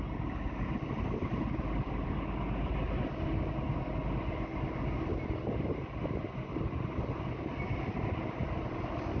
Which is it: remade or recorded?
recorded